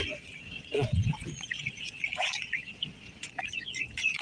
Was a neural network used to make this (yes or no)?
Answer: yes